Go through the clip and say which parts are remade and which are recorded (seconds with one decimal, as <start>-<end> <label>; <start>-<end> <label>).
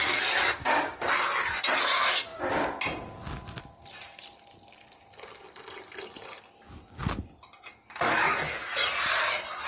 0.0-0.6 recorded; 0.6-1.1 remade; 1.1-9.7 recorded